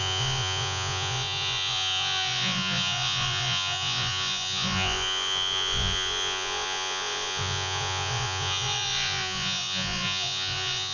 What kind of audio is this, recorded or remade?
remade